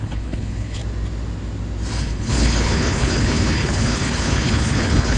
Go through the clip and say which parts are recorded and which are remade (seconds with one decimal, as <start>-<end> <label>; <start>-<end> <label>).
0.0-0.8 remade; 0.8-2.0 recorded; 2.0-5.2 remade